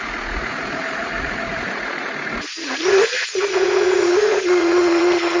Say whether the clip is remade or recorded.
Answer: remade